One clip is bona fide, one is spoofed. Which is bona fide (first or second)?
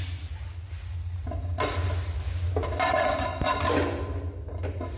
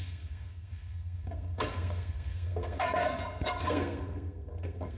first